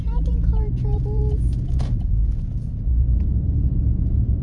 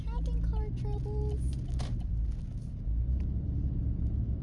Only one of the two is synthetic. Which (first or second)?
first